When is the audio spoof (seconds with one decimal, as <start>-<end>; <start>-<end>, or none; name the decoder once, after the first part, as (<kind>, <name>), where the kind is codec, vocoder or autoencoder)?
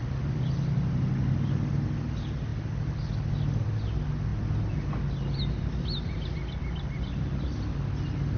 none